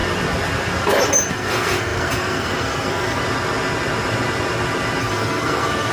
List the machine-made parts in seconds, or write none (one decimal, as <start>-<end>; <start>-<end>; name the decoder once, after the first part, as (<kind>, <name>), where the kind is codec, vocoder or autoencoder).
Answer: 1.3-3.2 (codec, SNAC); 5.0-5.9